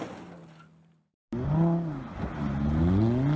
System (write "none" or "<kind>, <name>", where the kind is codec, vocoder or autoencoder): none